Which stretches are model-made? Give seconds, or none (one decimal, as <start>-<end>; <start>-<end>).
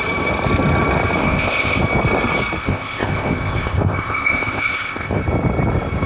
1.2-1.8; 2.6-5.2